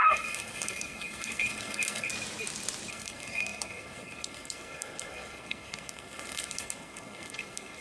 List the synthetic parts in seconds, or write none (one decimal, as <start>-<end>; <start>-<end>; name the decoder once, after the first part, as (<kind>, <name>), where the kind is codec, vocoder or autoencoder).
0.0-2.1 (codec, SNAC); 2.9-7.8